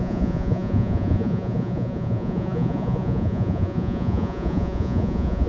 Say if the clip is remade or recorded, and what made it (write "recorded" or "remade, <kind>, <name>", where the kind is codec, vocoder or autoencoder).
remade, vocoder, Vocos